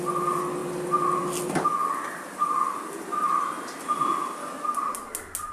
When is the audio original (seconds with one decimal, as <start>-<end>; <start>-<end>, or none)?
0.0-0.6; 1.2-1.8; 2.9-5.5